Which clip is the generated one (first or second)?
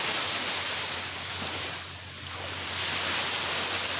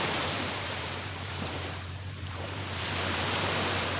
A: second